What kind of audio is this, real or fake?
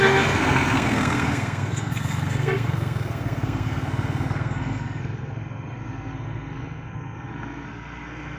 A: fake